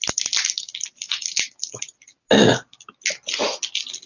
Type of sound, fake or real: real